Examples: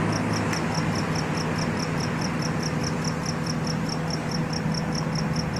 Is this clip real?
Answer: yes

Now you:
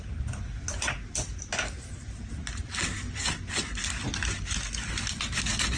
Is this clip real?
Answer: yes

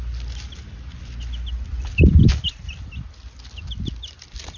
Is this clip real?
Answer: yes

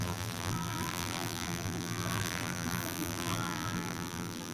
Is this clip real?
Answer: no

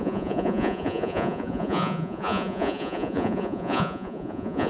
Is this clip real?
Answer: no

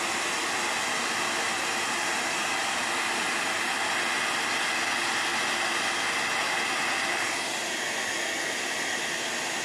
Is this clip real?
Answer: yes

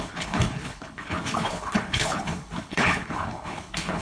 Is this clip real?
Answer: no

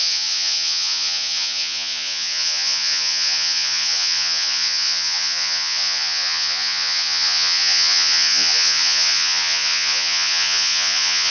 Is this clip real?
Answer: no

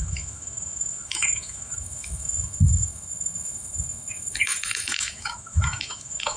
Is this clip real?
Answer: no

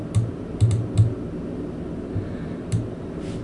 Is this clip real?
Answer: yes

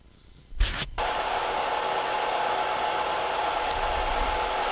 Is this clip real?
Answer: no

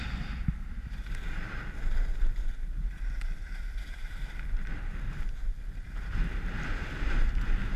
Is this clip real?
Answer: yes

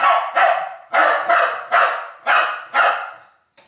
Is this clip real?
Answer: yes